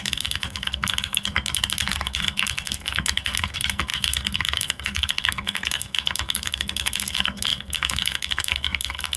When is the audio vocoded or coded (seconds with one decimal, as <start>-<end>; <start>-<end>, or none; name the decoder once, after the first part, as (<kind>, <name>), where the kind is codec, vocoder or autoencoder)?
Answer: 0.0-9.2 (codec, SNAC)